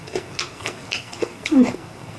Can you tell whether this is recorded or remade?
remade